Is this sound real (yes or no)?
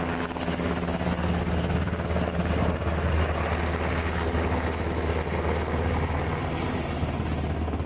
yes